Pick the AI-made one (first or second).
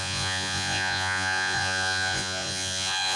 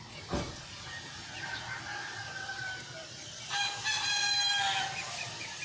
first